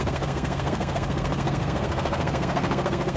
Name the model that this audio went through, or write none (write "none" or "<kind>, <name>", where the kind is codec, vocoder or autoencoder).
codec, SNAC